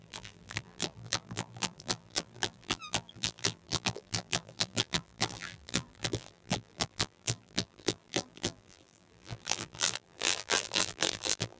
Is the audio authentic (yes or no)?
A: no